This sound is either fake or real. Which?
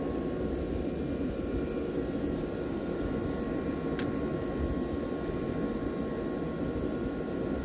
real